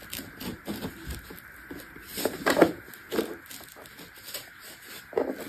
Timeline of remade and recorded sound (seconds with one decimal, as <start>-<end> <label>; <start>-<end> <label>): 0.0-5.5 recorded